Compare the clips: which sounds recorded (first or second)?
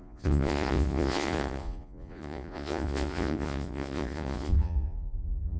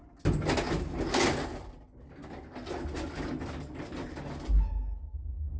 second